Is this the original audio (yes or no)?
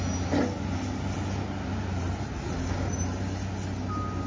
yes